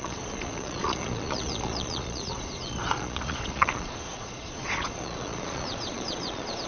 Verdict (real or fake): fake